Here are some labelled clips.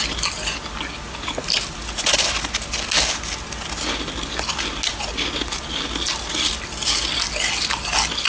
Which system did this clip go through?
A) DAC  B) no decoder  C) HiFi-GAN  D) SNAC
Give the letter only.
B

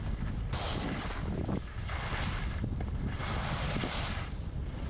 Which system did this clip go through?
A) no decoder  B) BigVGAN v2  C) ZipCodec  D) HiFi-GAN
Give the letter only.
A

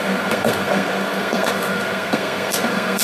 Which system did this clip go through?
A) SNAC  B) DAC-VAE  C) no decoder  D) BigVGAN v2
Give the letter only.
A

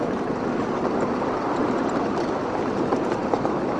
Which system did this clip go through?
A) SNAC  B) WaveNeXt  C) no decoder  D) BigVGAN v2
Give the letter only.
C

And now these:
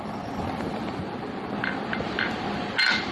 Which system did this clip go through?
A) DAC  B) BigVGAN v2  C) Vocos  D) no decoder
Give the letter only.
D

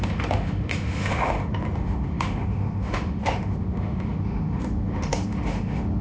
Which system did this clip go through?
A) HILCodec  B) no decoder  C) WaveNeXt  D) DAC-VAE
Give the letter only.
D